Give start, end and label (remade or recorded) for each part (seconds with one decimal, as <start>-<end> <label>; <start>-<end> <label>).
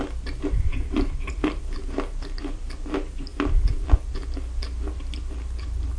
0.0-0.7 recorded; 0.7-1.6 remade; 1.6-6.0 recorded